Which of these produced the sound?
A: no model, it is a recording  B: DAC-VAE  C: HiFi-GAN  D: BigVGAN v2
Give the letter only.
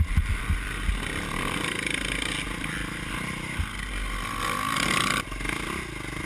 A